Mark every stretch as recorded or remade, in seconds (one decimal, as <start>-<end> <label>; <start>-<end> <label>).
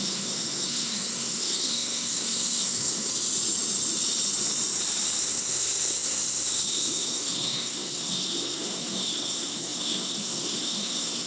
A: 0.0-3.1 remade; 3.1-5.2 recorded; 5.2-11.3 remade